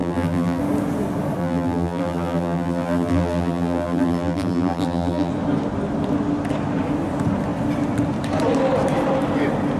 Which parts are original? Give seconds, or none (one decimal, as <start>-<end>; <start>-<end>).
0.6-1.4; 5.3-9.8